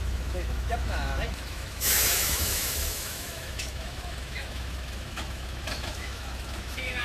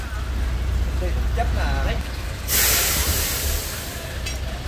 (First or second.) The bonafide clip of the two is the second